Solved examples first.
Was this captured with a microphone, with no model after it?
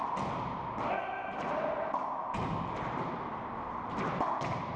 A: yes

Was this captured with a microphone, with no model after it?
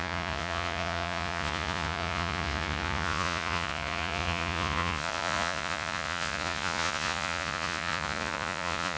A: no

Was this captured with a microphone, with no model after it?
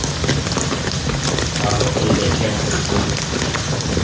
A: yes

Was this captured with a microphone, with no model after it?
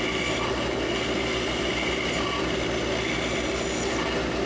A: yes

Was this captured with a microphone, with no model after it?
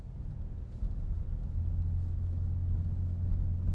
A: yes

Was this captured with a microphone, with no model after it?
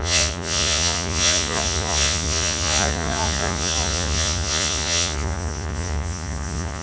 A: no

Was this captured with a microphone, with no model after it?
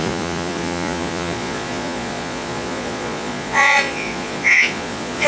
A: no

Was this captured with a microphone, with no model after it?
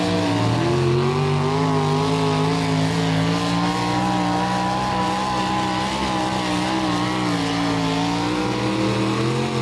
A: yes